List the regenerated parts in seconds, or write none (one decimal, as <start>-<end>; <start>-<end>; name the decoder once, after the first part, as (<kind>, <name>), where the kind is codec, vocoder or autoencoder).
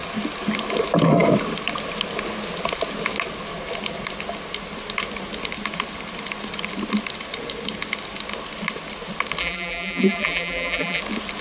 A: 9.4-11.0 (vocoder, BigVGAN v2)